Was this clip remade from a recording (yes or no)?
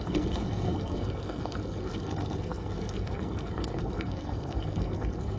yes